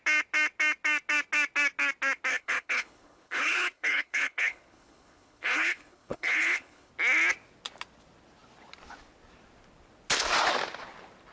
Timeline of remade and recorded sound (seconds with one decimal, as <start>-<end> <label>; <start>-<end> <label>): 0.0-2.3 recorded; 2.3-6.9 remade; 6.9-11.3 recorded